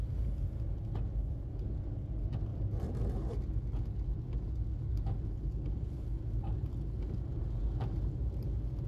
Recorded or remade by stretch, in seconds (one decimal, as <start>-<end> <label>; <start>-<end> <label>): 0.0-2.5 recorded; 2.5-4.5 remade; 4.5-8.9 recorded